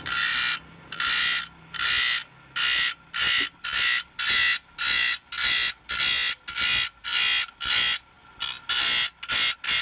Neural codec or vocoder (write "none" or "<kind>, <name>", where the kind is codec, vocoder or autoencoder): none